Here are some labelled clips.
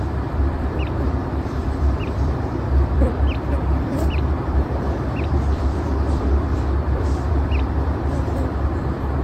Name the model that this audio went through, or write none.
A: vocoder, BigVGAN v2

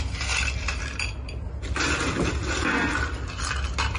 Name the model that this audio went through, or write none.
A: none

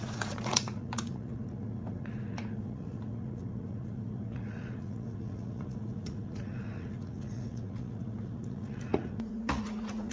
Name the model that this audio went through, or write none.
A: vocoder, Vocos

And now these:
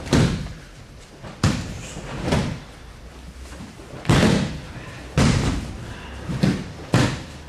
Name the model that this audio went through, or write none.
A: vocoder, BigVGAN v2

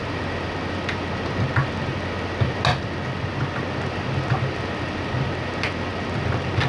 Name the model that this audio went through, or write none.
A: none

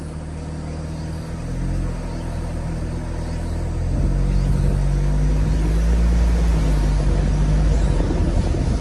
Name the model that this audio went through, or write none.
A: none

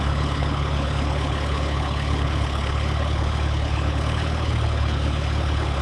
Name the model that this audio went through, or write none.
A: codec, HILCodec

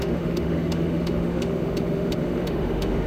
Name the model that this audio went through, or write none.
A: autoencoder, DAC-VAE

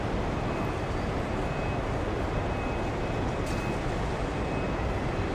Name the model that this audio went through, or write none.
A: none